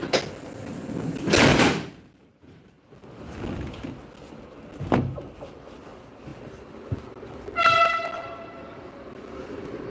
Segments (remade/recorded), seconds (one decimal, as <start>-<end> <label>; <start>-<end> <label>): 0.0-1.5 recorded; 1.5-2.7 remade; 2.7-9.9 recorded